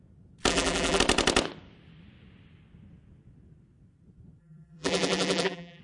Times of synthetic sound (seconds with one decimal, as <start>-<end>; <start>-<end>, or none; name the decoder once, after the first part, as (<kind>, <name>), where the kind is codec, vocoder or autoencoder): 0.5-1.0 (vocoder, BigVGAN v2); 4.4-5.8